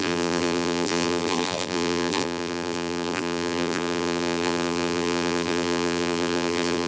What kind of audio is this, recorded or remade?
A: remade